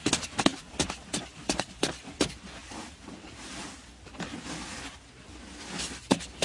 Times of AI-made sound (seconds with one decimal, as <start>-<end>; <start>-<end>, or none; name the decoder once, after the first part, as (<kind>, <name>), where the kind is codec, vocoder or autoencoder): 0.5-1.9 (vocoder, BigVGAN v2); 2.6-4.3